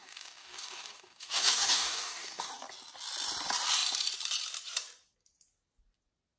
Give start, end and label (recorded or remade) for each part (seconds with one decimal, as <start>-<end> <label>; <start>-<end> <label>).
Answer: 0.0-2.5 remade; 2.5-6.4 recorded